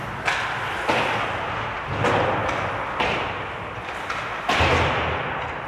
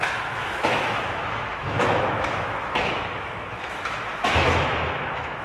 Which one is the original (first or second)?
first